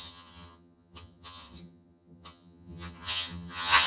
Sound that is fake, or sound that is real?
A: fake